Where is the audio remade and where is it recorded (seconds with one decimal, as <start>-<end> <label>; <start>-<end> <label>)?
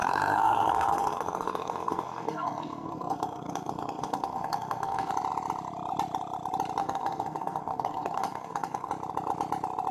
0.0-5.1 remade; 5.1-6.8 recorded; 6.8-8.9 remade; 8.9-9.9 recorded